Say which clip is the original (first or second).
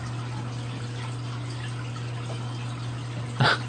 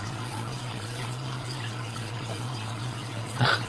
first